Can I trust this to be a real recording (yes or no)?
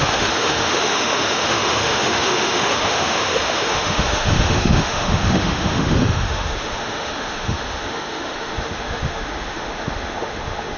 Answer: no